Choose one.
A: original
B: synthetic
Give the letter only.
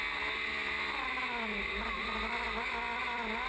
A